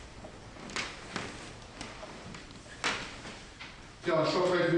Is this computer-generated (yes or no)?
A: no